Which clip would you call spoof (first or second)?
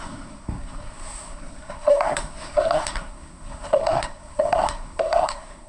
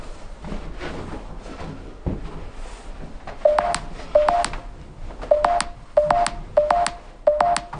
first